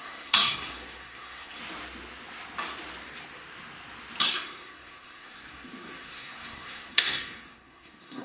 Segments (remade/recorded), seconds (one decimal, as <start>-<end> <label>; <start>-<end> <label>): 0.0-1.6 remade; 1.6-4.2 recorded; 4.2-8.2 remade